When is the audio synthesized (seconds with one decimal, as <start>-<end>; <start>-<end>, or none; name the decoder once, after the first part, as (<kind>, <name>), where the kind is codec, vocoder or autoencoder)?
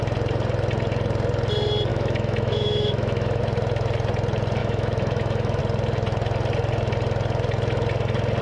1.9-3.4 (autoencoder, DAC-VAE); 4.6-5.6